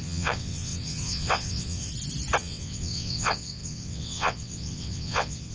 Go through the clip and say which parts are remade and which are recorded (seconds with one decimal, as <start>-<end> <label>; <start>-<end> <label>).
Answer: 0.0-1.9 remade; 1.9-2.4 recorded; 2.4-5.5 remade